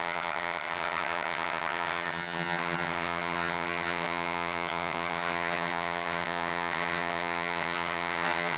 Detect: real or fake fake